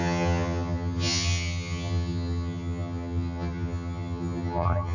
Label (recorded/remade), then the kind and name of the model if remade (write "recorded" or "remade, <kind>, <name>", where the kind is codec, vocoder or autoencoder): remade, vocoder, HiFi-GAN